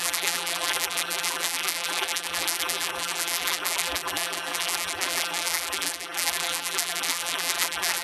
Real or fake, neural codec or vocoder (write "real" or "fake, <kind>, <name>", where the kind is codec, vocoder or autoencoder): fake, vocoder, BigVGAN v2